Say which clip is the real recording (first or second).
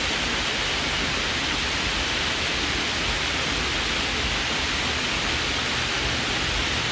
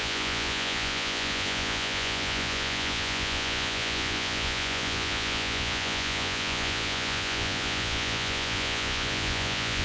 first